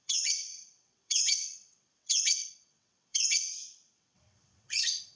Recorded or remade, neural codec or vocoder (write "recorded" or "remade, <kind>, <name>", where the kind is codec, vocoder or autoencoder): remade, vocoder, WaveNeXt